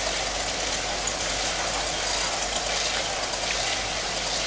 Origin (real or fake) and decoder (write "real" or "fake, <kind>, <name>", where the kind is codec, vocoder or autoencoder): real